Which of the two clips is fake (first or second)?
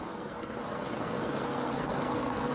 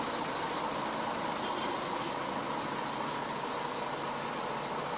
first